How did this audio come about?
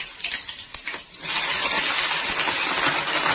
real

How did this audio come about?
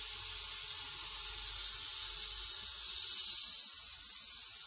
real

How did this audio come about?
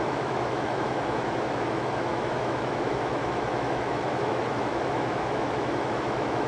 fake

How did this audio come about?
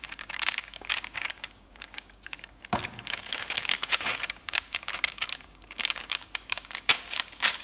fake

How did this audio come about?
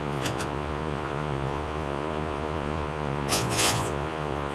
fake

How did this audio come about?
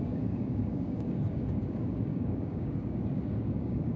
fake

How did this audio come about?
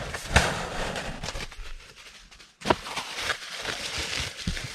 fake